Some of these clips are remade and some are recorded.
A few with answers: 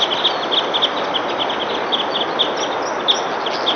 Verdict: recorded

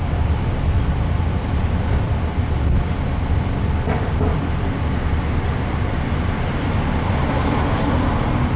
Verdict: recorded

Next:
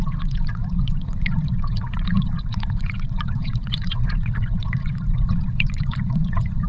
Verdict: remade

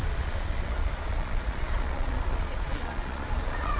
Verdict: remade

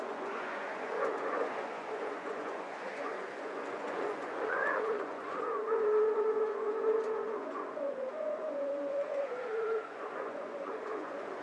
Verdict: remade